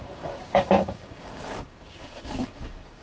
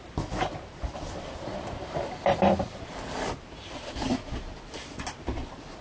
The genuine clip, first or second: second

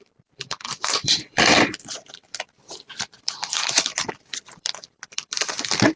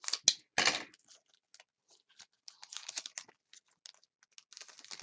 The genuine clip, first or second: second